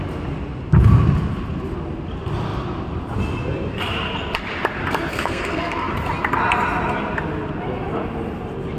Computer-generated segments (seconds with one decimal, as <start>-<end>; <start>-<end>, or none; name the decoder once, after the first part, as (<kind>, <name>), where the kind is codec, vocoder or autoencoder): 5.1-5.9 (codec, SNAC)